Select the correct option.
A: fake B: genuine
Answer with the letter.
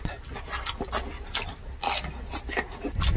B